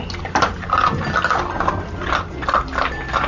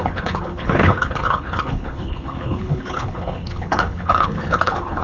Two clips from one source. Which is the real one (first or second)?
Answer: first